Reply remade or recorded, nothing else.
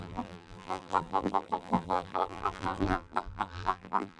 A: remade